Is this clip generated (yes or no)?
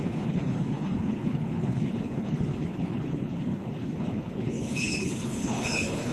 yes